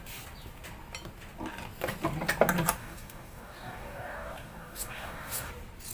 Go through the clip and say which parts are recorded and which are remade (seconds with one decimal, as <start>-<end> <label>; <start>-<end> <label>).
0.0-2.8 recorded; 2.8-5.5 remade; 5.5-5.9 recorded